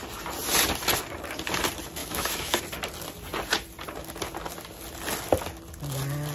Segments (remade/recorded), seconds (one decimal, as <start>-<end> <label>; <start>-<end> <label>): 0.0-2.0 recorded; 2.0-2.6 remade; 2.6-6.3 recorded